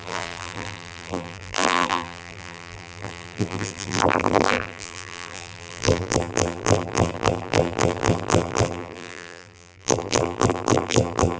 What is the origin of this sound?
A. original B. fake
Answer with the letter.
B